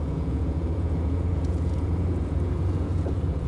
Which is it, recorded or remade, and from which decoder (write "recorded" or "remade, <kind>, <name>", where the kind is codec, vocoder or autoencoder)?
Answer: remade, vocoder, Vocos